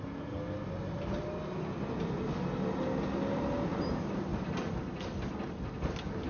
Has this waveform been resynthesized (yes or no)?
no